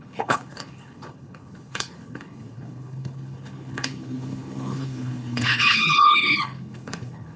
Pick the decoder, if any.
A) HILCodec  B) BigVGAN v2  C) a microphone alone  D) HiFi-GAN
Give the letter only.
A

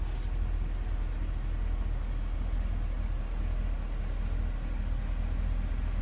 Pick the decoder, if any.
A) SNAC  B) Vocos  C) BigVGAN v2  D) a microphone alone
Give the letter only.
D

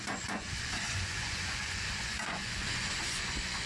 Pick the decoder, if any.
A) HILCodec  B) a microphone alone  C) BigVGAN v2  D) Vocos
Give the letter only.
D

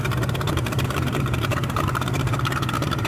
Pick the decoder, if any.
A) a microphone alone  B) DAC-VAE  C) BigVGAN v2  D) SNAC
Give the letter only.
C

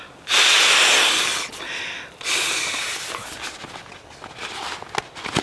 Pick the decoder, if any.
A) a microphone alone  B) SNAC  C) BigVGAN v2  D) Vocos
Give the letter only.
A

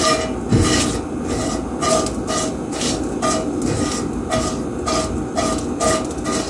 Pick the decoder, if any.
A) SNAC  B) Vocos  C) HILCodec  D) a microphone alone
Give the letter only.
D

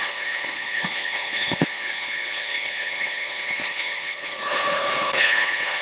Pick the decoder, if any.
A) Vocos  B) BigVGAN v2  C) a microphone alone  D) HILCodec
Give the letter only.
D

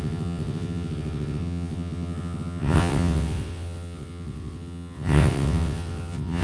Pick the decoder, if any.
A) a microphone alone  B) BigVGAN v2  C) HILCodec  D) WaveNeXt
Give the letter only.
D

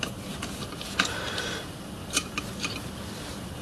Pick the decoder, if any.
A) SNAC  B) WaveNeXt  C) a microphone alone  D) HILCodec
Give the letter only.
C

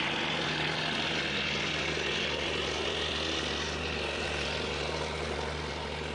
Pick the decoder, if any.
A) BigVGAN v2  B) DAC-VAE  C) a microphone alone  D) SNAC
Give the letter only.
C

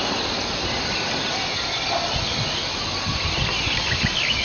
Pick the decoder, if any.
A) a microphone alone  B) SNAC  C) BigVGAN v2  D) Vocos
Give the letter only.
A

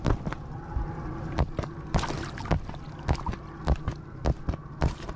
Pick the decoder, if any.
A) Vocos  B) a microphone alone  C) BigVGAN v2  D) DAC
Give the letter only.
B